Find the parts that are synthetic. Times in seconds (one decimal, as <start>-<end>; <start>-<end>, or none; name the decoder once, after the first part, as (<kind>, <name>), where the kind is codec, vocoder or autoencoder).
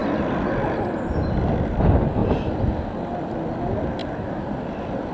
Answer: none